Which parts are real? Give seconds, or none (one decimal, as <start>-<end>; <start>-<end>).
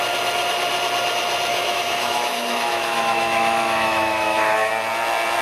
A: 0.0-1.5; 4.7-5.4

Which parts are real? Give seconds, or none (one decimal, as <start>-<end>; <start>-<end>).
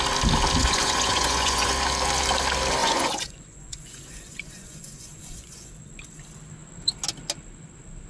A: 0.0-0.6; 1.7-2.8; 5.7-8.1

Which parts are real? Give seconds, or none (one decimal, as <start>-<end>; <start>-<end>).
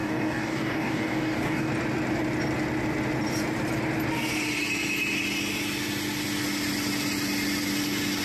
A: 1.7-8.2